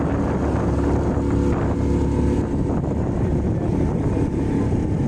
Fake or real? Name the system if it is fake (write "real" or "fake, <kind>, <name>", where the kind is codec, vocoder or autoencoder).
real